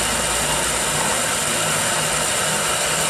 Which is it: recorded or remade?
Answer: recorded